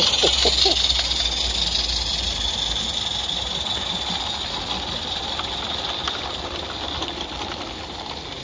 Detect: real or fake real